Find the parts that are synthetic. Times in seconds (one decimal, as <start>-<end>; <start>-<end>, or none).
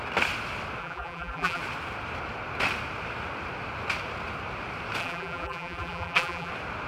0.8-1.6; 5.0-6.5